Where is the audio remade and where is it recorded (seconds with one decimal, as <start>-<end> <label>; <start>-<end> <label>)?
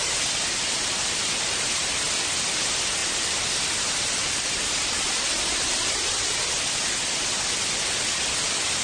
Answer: 0.0-8.8 recorded